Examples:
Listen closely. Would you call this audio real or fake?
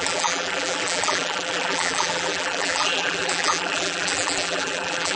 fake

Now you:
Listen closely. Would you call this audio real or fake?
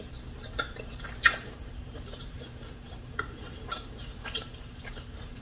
fake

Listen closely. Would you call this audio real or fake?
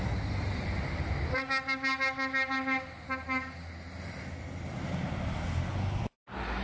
real